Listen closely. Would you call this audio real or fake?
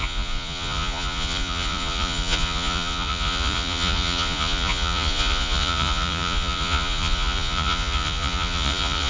fake